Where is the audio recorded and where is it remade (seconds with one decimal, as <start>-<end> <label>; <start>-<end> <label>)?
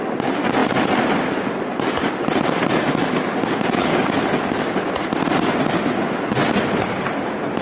0.0-7.6 recorded